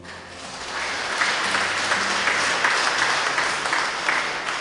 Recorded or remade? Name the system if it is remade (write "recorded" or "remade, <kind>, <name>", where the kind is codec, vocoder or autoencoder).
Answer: recorded